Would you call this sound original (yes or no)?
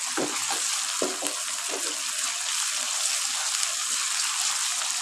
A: yes